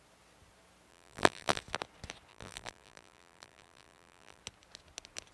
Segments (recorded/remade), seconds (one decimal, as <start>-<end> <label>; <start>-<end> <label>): 0.0-0.9 recorded; 0.9-1.6 remade; 1.6-2.3 recorded; 2.3-4.4 remade; 4.4-5.3 recorded